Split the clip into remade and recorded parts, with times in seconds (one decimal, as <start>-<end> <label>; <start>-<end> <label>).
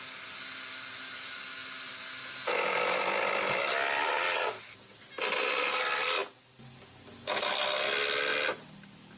0.0-9.2 recorded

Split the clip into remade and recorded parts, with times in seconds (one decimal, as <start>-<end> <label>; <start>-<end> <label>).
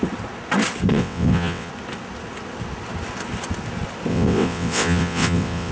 0.0-0.9 recorded; 0.9-1.7 remade; 1.7-4.1 recorded; 4.1-5.7 remade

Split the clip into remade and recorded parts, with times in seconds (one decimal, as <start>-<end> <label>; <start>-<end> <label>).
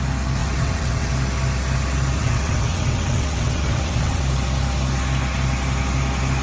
0.0-0.4 recorded; 0.4-1.1 remade; 1.1-2.2 recorded; 2.2-4.2 remade; 4.2-6.4 recorded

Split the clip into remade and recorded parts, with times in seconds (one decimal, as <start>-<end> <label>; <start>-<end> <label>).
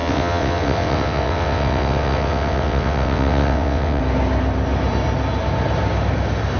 0.0-4.0 remade; 4.0-6.6 recorded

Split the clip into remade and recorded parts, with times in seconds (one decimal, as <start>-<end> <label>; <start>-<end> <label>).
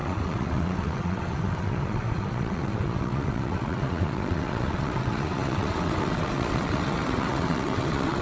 0.0-8.2 remade